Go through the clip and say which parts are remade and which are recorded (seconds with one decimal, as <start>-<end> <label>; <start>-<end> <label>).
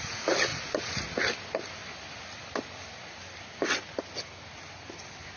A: 0.0-5.4 recorded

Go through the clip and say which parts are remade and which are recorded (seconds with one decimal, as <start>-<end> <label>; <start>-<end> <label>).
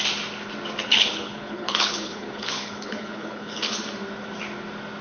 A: 0.0-0.8 recorded; 0.8-3.8 remade; 3.8-5.0 recorded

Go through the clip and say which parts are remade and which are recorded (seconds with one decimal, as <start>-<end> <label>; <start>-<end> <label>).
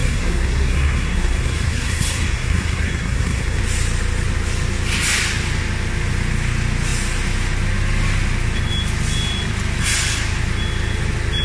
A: 0.0-3.6 remade; 3.6-11.4 recorded